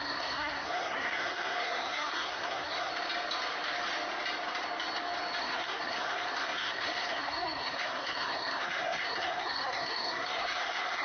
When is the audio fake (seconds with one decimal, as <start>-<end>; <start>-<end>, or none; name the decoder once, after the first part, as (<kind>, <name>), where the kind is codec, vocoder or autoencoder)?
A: 0.0-2.9 (codec, SNAC); 5.4-11.0